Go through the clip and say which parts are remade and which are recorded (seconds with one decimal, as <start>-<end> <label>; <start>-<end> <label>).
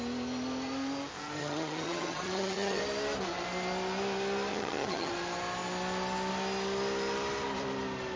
0.0-1.4 recorded; 1.4-2.8 remade; 2.8-4.5 recorded; 4.5-5.1 remade; 5.1-8.2 recorded